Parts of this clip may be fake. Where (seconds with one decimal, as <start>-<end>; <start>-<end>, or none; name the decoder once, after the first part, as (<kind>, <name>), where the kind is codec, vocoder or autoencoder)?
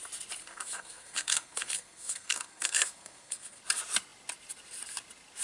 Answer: 0.4-3.6 (codec, SNAC)